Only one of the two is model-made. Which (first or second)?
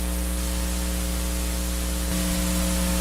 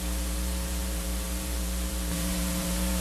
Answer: second